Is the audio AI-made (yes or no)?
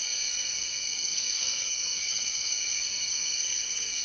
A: yes